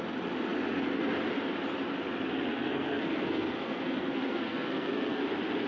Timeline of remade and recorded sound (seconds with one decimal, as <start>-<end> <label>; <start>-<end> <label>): 0.0-2.5 recorded; 2.5-5.3 remade; 5.3-5.7 recorded